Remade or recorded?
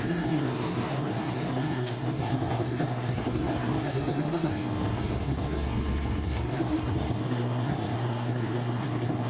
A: remade